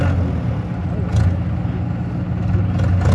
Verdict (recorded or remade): recorded